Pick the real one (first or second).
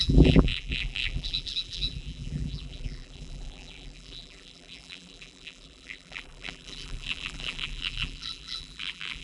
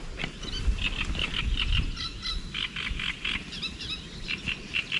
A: second